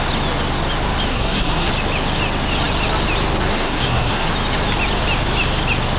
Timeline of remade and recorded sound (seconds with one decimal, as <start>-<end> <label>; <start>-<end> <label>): 0.0-1.1 recorded; 1.1-1.7 remade; 1.7-3.5 recorded; 3.5-4.3 remade; 4.3-6.0 recorded